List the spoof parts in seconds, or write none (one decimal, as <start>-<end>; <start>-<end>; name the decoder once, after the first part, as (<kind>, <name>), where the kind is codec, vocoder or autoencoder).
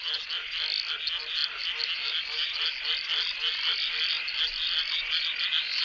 none